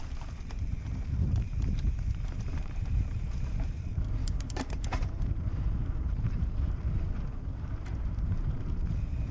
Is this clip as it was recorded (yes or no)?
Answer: no